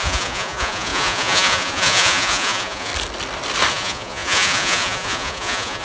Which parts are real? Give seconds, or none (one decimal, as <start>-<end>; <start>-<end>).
2.9-3.7